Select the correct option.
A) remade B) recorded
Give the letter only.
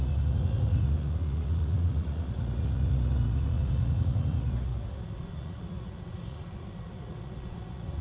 A